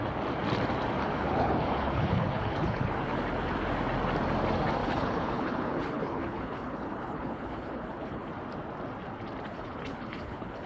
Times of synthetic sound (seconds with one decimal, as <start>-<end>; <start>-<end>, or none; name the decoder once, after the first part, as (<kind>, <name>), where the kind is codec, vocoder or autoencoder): 1.0-3.2 (codec, HILCodec); 4.8-8.3; 9.5-10.7